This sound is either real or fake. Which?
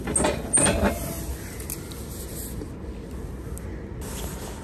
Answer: real